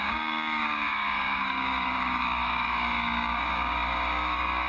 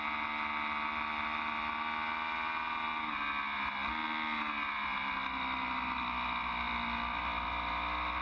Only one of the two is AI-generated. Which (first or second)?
first